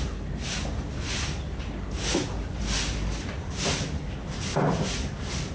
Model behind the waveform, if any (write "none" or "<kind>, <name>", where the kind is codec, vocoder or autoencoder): none